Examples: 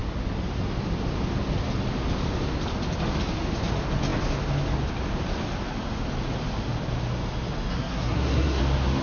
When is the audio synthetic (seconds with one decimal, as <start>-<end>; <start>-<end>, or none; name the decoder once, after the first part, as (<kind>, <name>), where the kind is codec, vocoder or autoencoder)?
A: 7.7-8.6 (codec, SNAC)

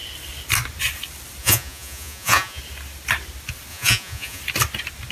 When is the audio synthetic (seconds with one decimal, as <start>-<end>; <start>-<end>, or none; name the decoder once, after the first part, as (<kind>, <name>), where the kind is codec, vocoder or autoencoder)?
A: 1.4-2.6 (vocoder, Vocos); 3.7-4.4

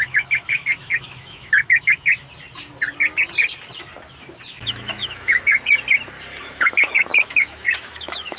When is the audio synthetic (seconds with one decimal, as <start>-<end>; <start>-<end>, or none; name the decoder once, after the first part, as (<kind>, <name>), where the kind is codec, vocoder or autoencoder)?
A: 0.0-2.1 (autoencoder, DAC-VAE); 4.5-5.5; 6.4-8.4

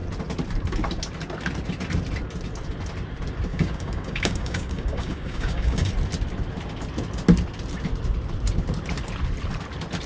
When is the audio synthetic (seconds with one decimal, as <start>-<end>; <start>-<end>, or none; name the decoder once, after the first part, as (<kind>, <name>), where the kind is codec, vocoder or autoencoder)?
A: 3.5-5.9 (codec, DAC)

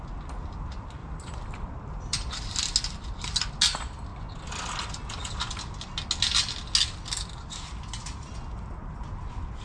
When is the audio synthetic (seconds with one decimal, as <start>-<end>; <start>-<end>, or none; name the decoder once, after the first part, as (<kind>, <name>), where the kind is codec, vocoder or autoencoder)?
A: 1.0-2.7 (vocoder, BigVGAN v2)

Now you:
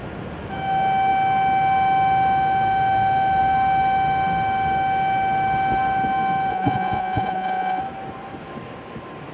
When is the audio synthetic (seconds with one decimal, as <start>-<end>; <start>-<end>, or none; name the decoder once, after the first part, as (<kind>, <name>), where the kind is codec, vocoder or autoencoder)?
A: 6.5-7.8 (vocoder, Vocos)

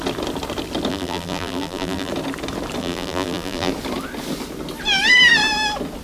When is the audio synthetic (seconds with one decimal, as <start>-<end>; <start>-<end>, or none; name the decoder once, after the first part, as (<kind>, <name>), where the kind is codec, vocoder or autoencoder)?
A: 0.9-2.1 (vocoder, BigVGAN v2); 2.8-3.7